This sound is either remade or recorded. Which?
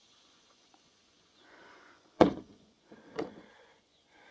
remade